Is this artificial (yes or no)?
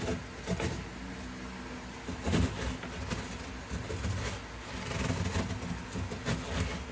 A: no